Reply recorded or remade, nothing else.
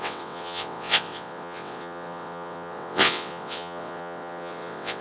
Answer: remade